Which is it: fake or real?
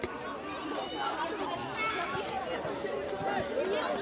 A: real